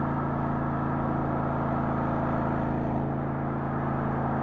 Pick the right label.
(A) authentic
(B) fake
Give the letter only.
A